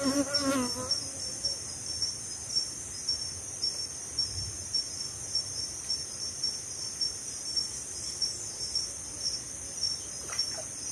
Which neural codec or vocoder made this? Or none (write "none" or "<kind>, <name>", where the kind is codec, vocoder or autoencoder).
none